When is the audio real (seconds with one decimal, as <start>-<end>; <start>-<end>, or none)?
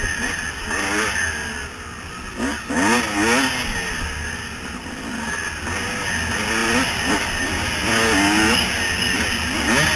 0.0-6.6; 7.3-10.0